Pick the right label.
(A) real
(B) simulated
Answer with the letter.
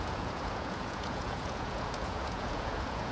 B